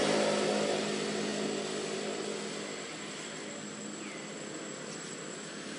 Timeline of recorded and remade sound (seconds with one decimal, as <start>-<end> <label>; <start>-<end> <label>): 0.0-5.8 recorded